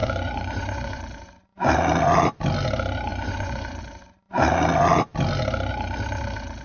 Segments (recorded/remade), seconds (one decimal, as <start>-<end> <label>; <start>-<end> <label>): 0.0-1.0 remade; 1.0-3.1 recorded; 3.1-3.8 remade; 3.8-6.6 recorded